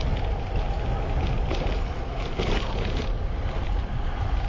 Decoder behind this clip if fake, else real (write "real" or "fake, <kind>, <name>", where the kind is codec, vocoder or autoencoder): real